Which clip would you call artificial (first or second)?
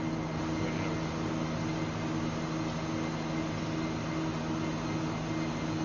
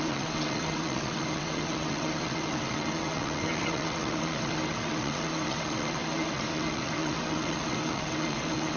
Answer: second